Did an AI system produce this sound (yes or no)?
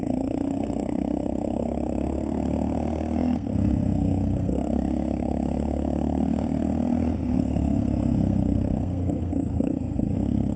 yes